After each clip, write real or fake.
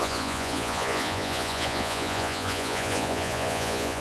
fake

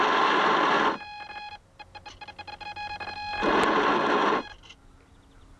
real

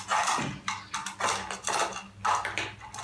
real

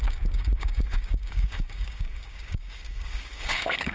fake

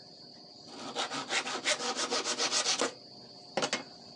real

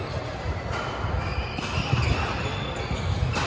real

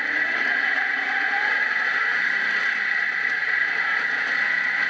fake